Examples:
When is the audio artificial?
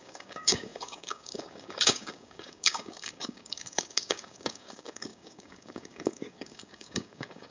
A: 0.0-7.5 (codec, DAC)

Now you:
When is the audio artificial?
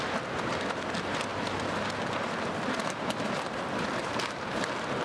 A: 1.3-4.3 (vocoder, BigVGAN v2)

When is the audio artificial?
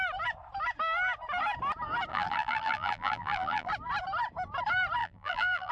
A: 2.1-3.7 (vocoder, BigVGAN v2); 5.0-5.7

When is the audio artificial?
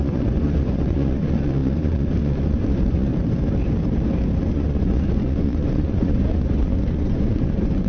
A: 0.0-3.1 (vocoder, Vocos); 4.5-7.9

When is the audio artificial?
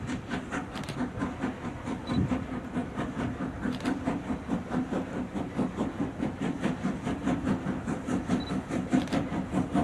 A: none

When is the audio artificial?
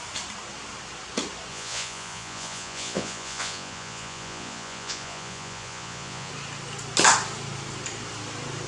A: 1.5-6.3 (vocoder, Vocos)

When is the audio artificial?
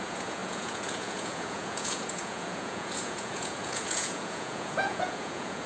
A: 0.0-5.7 (vocoder, Vocos)